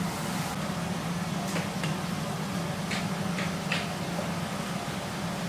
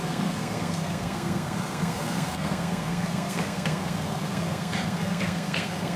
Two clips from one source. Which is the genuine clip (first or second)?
first